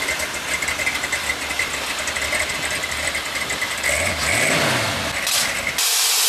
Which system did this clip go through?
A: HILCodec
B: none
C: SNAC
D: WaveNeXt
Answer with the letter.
B